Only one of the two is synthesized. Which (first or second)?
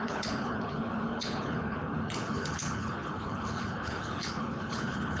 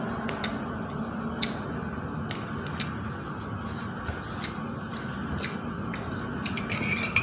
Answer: first